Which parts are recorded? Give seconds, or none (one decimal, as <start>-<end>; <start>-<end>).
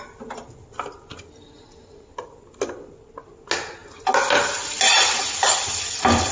0.0-6.3